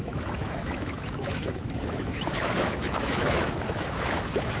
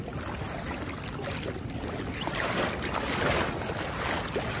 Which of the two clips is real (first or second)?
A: second